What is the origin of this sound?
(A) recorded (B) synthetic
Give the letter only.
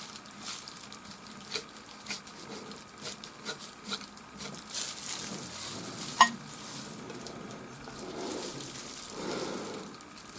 A